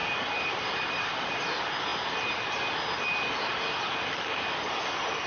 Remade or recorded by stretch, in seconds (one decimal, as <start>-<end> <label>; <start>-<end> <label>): 0.0-5.3 recorded

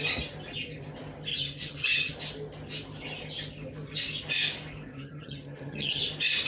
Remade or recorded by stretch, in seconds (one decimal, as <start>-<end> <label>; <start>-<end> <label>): 0.0-1.3 recorded; 1.3-2.1 remade; 2.1-4.9 recorded; 4.9-6.0 remade; 6.0-6.5 recorded